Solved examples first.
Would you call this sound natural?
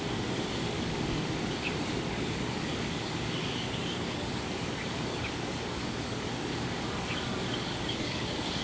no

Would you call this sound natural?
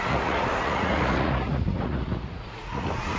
no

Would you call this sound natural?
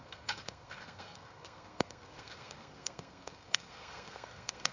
no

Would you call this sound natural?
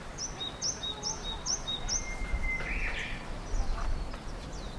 yes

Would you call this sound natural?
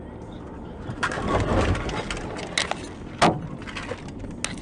yes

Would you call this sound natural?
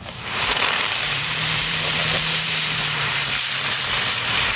no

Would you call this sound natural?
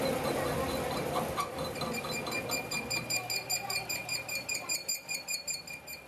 yes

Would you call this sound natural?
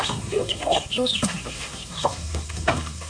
no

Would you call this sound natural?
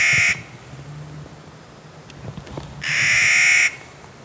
yes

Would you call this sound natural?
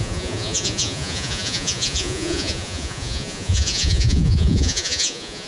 no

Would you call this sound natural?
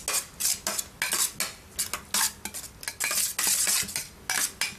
yes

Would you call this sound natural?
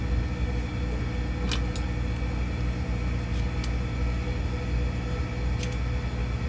yes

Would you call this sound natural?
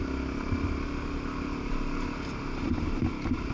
yes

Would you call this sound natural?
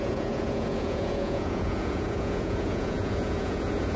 no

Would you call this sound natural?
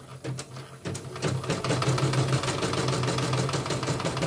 yes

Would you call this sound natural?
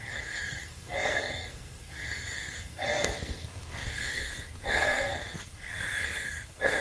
no